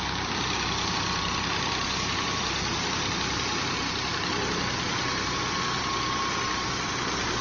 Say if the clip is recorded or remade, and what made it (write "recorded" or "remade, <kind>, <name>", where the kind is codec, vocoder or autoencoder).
recorded